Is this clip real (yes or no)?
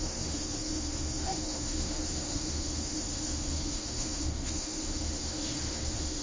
no